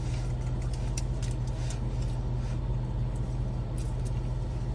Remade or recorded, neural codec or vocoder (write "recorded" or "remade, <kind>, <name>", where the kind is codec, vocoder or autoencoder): recorded